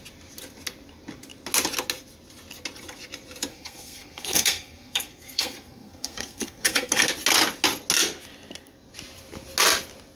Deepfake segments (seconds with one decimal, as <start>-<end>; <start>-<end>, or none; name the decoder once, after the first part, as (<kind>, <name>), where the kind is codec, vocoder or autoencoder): 3.5-7.1 (codec, SNAC)